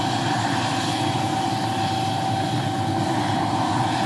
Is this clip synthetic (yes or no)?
no